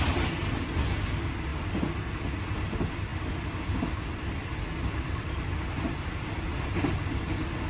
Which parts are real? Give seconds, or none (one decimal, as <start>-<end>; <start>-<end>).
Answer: 0.0-7.7